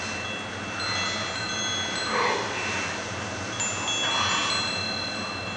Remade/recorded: recorded